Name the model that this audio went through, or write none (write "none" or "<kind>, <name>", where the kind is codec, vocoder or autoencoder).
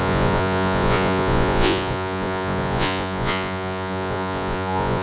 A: vocoder, Vocos